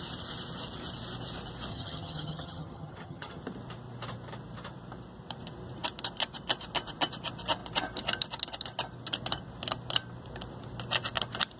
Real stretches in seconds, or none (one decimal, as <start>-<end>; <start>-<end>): 0.0-1.7; 3.4-11.6